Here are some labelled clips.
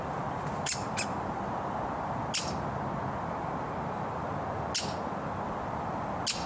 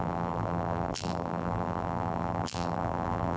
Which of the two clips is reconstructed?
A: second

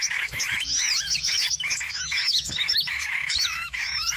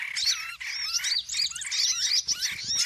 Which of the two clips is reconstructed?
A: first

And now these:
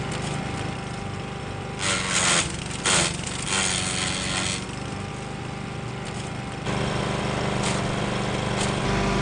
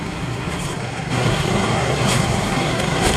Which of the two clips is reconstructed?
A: second